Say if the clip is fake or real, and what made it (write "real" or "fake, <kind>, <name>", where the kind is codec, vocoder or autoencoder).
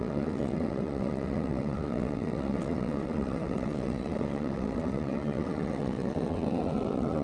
fake, vocoder, WaveNeXt